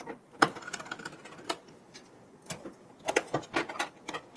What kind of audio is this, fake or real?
real